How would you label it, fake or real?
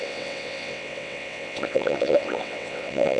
fake